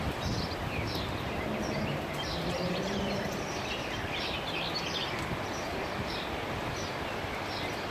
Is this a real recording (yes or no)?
yes